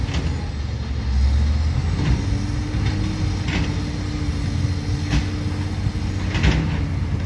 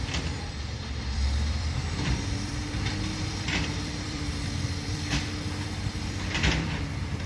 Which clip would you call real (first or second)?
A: first